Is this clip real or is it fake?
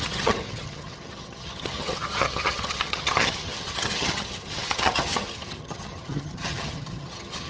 fake